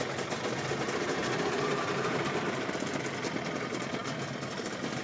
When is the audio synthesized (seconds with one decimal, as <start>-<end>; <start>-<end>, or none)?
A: 1.2-2.7